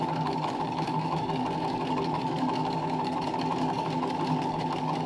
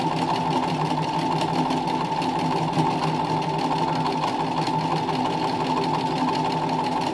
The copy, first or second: first